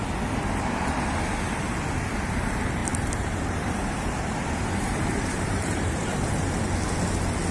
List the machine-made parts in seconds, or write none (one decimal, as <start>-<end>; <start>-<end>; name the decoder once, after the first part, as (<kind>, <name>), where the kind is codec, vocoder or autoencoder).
2.8-6.6 (vocoder, BigVGAN v2)